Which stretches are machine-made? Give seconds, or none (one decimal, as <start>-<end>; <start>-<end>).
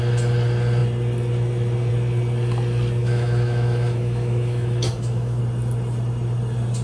3.0-5.4